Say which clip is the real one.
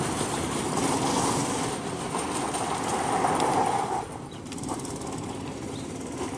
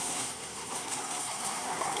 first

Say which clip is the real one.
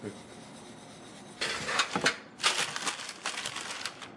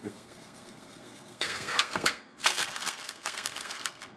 first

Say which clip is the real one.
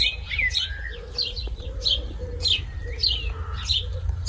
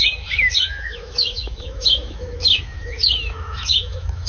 first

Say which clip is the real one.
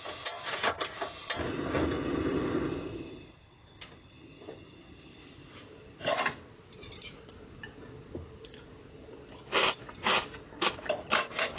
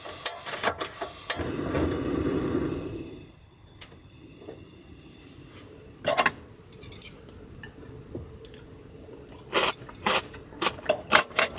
first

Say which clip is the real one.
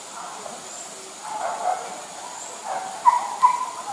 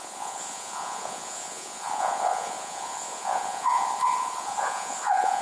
first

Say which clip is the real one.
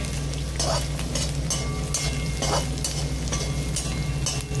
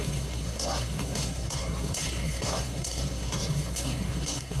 first